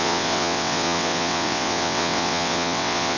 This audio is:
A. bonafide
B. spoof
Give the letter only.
B